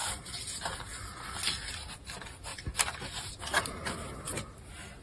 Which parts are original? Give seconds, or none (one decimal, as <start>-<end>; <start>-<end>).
0.0-1.9